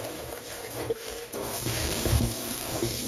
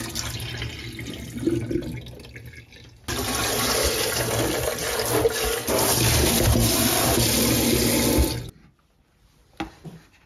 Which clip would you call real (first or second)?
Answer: second